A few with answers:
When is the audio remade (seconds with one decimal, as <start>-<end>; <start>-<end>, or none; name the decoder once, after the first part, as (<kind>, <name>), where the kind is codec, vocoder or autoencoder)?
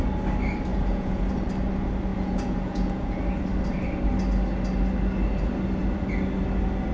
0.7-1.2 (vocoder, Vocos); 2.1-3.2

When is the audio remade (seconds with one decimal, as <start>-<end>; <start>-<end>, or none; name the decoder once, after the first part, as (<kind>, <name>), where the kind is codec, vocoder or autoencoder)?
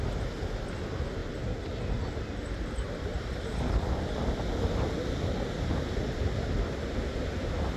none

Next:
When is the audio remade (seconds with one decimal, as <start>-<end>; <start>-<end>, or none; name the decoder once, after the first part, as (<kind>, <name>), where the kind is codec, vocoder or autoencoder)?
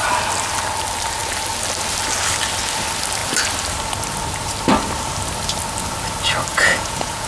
6.5-7.3 (vocoder, Vocos)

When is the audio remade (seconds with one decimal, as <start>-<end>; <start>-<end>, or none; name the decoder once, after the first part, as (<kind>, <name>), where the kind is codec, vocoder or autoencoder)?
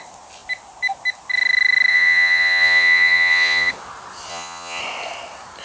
1.9-3.7 (vocoder, Vocos); 4.3-4.8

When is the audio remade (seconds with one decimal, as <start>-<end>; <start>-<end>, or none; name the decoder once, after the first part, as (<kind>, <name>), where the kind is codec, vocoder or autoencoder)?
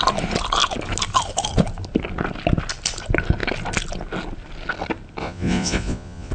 5.2-6.3 (vocoder, Vocos)